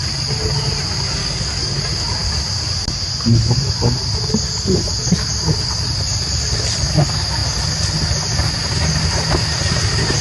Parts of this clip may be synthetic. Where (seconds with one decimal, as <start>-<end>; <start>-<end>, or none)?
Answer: 1.2-1.8

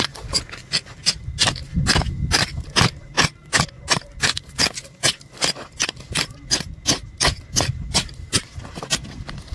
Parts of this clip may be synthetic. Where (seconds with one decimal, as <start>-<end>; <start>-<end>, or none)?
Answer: none

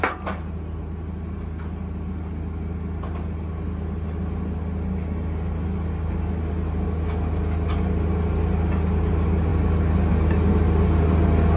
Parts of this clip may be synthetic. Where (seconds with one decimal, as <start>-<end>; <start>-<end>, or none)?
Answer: none

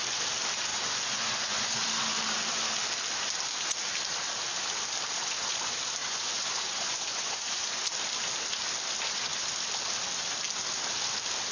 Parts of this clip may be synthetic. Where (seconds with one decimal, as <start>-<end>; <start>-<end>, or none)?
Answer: 0.7-1.7; 6.0-7.8